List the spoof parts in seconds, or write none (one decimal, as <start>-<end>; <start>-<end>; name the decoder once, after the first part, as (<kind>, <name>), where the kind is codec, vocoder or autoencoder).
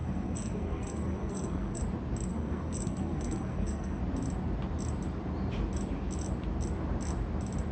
0.0-1.8 (codec, SNAC); 2.3-4.0